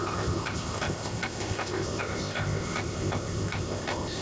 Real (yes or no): no